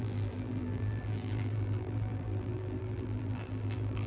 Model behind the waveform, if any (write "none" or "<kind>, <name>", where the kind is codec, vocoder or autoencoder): vocoder, BigVGAN v2